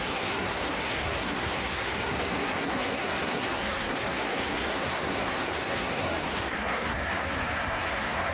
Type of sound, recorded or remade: remade